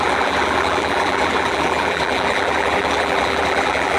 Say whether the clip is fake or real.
fake